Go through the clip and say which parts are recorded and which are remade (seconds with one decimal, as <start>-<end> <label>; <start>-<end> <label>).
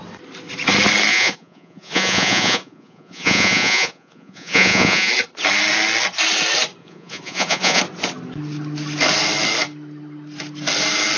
0.0-1.1 recorded; 1.1-5.1 remade; 5.1-6.8 recorded; 6.8-7.8 remade; 7.8-11.2 recorded